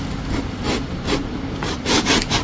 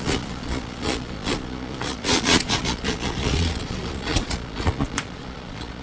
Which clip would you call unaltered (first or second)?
first